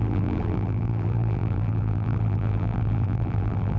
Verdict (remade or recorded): remade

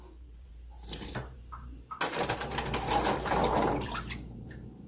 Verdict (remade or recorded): remade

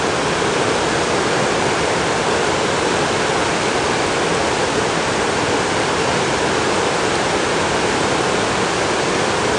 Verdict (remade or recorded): remade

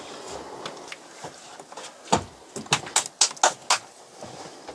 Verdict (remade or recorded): recorded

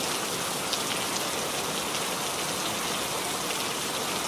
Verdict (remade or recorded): recorded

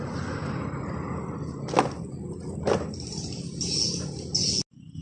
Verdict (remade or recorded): recorded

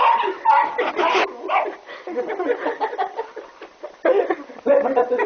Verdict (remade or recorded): remade